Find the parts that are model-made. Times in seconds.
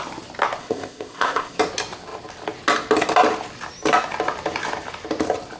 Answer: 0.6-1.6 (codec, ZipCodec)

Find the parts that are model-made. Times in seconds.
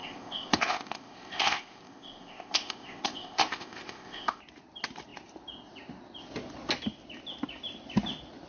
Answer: 0.0-4.4 (codec, ZipCodec)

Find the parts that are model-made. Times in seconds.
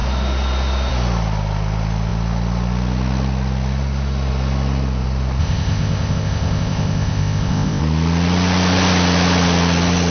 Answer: 5.4-7.8 (codec, ZipCodec)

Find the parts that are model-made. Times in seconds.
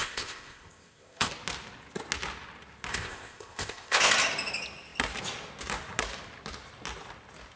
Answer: 0.0-1.3 (codec, ZipCodec); 2.9-4.1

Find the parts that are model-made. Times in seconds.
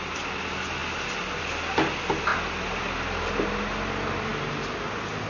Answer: none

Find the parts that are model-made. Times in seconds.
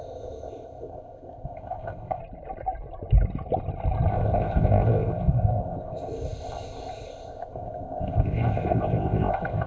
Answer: 0.0-2.2 (codec, ZipCodec); 4.1-9.7